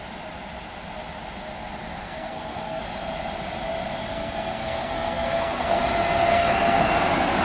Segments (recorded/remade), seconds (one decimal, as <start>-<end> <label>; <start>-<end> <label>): 0.0-2.0 recorded; 2.0-2.8 remade; 2.8-4.1 recorded; 4.1-5.8 remade; 5.8-6.3 recorded; 6.3-6.9 remade; 6.9-7.4 recorded